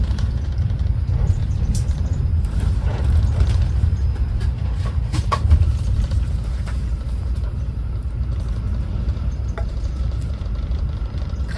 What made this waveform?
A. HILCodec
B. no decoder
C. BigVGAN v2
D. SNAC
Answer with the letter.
C